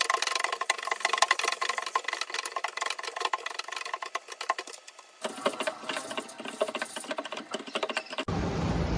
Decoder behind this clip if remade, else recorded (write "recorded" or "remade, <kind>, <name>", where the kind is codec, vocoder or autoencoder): recorded